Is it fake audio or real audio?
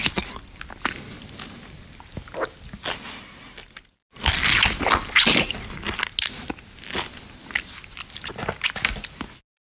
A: real